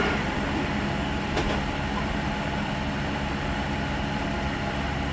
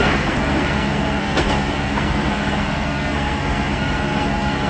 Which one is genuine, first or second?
first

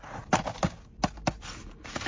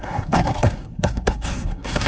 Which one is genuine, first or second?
first